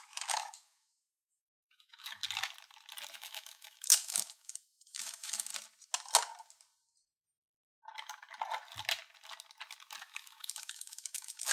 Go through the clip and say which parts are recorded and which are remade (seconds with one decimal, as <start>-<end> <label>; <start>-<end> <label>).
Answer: 0.0-2.2 remade; 2.2-3.1 recorded; 3.1-5.5 remade; 5.5-10.0 recorded; 10.0-11.5 remade